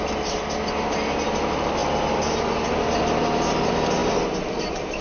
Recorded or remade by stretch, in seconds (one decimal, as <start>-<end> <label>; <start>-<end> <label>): 0.0-5.0 recorded